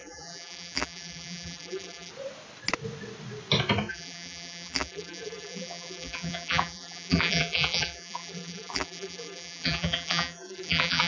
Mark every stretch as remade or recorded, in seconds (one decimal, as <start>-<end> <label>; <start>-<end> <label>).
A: 0.0-2.1 remade; 2.1-3.9 recorded; 3.9-11.1 remade